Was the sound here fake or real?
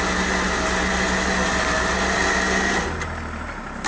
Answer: real